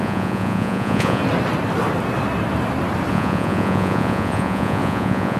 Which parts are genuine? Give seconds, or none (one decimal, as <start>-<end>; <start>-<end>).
1.2-3.1